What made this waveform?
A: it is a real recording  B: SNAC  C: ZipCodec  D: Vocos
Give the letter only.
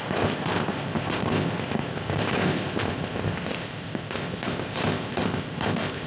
C